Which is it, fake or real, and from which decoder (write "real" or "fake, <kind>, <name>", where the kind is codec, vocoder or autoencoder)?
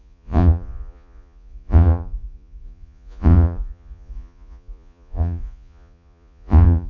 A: fake, vocoder, Vocos